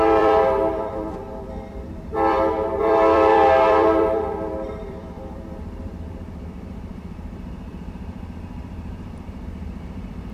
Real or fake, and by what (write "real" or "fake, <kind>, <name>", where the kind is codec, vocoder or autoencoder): fake, vocoder, BigVGAN v2